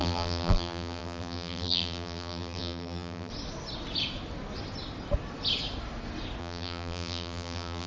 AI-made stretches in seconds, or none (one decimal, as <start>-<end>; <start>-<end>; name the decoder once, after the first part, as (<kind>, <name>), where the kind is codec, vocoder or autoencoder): 0.0-3.3 (vocoder, BigVGAN v2); 6.4-7.9